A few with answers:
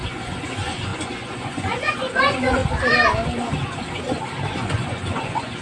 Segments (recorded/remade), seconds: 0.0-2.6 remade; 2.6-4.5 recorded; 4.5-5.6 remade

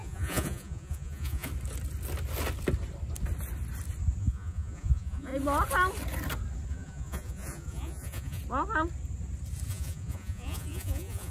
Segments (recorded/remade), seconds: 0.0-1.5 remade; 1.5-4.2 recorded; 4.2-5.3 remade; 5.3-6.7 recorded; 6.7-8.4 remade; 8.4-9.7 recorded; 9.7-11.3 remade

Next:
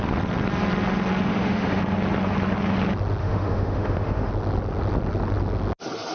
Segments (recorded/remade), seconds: 0.0-1.3 recorded; 1.3-1.8 remade; 1.8-3.2 recorded; 3.2-4.3 remade; 4.3-6.1 recorded

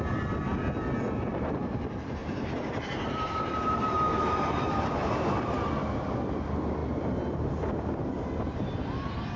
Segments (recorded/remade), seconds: 0.0-2.2 recorded; 2.2-5.1 remade; 5.1-9.4 recorded

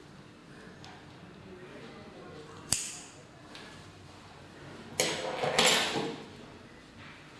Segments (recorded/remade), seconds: 0.0-7.4 recorded

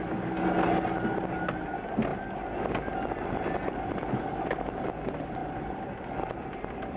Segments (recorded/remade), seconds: 0.0-7.0 recorded

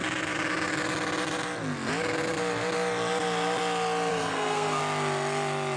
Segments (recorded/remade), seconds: 0.0-4.1 recorded; 4.1-4.8 remade; 4.8-5.8 recorded

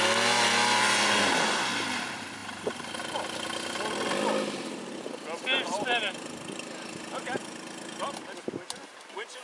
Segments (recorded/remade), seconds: 0.0-2.4 recorded; 2.4-7.4 remade; 7.4-9.4 recorded